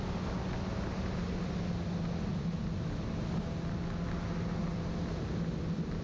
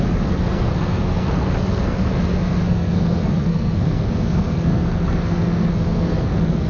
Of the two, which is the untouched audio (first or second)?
first